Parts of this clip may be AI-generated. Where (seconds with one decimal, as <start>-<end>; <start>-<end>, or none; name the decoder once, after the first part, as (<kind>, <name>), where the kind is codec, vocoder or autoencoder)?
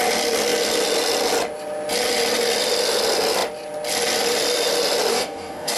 5.1-5.8 (codec, DAC)